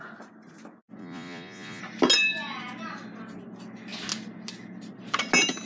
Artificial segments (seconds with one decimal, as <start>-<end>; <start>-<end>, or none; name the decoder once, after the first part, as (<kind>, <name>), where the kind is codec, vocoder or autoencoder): 1.0-1.8 (vocoder, Vocos)

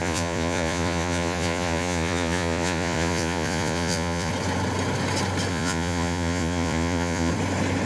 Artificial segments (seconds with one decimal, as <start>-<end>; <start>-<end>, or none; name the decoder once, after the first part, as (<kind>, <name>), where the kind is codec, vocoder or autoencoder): 0.0-4.3 (vocoder, Vocos); 5.5-7.3

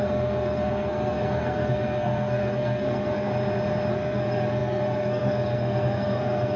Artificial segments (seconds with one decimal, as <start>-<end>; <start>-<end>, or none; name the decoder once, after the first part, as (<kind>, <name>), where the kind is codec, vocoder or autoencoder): 0.0-3.3 (codec, SNAC); 3.9-6.6